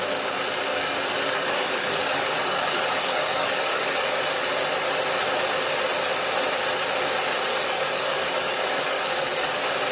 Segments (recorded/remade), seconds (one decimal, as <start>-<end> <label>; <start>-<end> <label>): 0.0-0.7 recorded; 0.7-4.2 remade; 4.2-7.5 recorded; 7.5-9.5 remade; 9.5-9.9 recorded